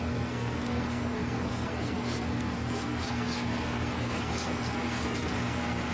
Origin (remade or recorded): remade